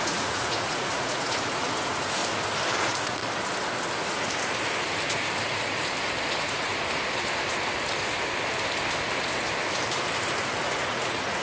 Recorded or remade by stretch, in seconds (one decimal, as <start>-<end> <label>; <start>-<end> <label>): 0.0-2.2 remade; 2.2-2.8 recorded; 2.8-3.2 remade; 3.2-6.3 recorded; 6.3-6.7 remade; 6.7-10.6 recorded; 10.6-11.4 remade